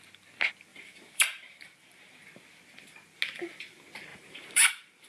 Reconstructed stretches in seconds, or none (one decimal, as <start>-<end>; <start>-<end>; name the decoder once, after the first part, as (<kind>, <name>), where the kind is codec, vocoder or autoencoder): 0.7-2.0 (vocoder, BigVGAN v2); 4.1-5.1